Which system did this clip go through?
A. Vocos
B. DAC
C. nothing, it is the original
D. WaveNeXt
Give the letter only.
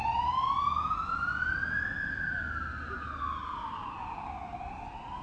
C